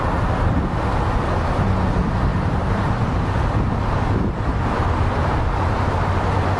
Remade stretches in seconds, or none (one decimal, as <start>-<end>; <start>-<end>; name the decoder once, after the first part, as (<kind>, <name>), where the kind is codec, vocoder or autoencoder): 2.3-5.7 (vocoder, BigVGAN v2)